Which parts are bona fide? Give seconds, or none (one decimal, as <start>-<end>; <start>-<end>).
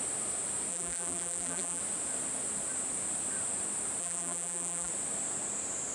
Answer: 0.0-0.7; 1.8-4.0; 4.9-5.9